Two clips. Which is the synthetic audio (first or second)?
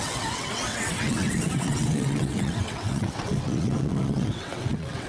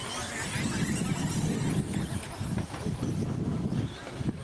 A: first